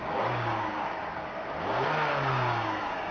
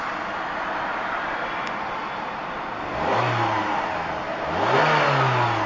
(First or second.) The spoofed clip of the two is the first